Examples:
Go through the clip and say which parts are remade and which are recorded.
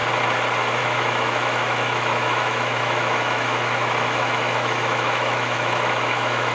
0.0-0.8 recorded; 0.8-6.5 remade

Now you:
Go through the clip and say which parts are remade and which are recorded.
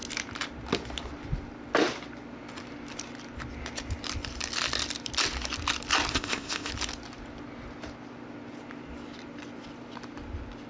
0.0-6.1 recorded; 6.1-6.7 remade; 6.7-10.7 recorded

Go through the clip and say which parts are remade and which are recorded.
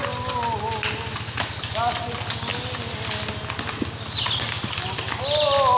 0.0-5.8 recorded